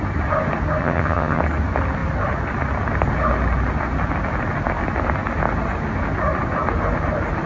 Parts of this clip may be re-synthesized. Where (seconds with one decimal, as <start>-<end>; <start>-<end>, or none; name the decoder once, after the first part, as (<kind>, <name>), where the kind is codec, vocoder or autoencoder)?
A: 0.8-1.4 (vocoder, HiFi-GAN)

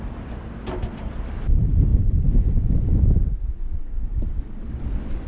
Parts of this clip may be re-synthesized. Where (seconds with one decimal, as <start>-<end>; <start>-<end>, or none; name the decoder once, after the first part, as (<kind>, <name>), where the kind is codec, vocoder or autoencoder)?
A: none

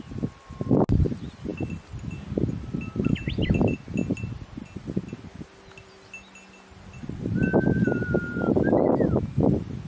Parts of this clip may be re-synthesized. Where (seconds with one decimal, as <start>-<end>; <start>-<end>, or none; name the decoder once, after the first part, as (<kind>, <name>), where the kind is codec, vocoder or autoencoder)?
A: none

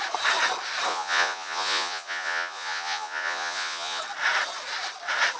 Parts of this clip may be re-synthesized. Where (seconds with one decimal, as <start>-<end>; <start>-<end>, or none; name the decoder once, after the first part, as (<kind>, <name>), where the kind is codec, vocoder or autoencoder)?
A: 0.9-4.0 (vocoder, Vocos)